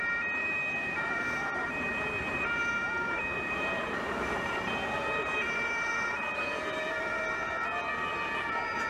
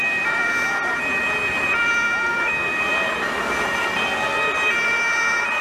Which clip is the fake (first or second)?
first